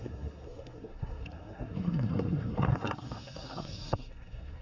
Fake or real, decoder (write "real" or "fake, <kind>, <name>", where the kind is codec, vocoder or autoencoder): fake, codec, SNAC